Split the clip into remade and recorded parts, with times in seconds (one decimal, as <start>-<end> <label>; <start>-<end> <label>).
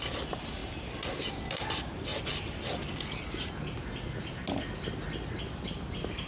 0.0-6.3 recorded